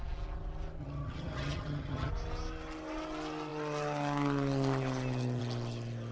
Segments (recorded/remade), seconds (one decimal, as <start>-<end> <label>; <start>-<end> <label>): 0.0-0.8 recorded; 0.8-2.1 remade; 2.1-6.1 recorded